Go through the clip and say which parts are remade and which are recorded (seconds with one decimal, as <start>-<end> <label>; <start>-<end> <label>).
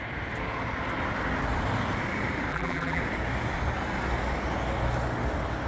0.0-2.5 recorded; 2.5-3.0 remade; 3.0-5.7 recorded